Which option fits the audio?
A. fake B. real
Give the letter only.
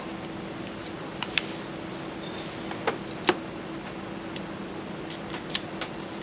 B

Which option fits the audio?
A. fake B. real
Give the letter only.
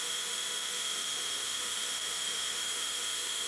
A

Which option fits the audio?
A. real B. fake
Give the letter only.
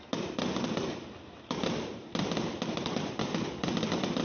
B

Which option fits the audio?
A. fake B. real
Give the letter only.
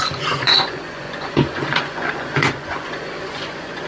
A